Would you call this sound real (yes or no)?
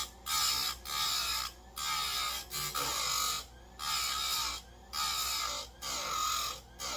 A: yes